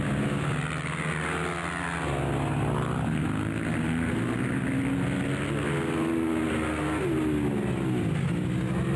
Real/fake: real